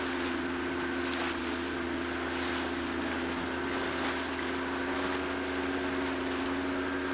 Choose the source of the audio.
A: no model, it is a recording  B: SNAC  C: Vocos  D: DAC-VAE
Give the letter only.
A